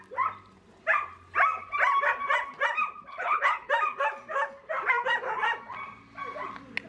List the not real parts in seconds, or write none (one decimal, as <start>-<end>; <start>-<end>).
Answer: 3.1-3.7

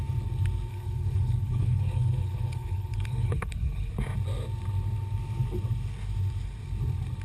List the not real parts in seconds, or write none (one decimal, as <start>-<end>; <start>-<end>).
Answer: 0.7-3.9

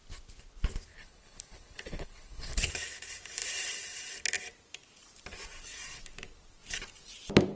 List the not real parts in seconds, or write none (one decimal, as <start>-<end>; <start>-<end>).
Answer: 0.9-2.7

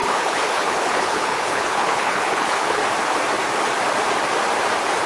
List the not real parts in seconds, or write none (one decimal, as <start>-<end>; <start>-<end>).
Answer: 0.0-2.8

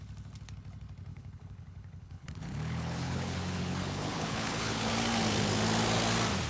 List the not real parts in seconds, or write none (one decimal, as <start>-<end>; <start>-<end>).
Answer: 1.1-4.9

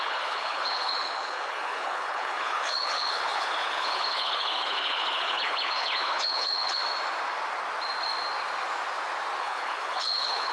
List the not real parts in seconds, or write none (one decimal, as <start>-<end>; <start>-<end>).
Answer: 0.0-6.8; 9.4-10.5

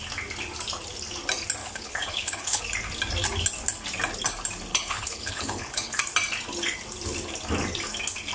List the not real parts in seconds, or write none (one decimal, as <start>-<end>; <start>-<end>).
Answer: 1.6-2.6; 4.7-6.0